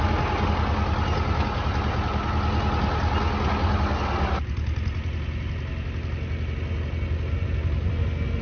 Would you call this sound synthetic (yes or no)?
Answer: no